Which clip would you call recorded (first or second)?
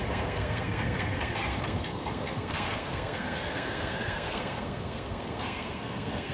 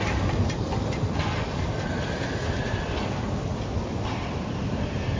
second